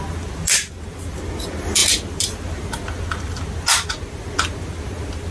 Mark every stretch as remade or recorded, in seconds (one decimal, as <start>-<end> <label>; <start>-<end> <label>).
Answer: 0.0-5.3 recorded